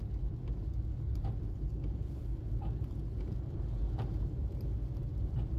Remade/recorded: remade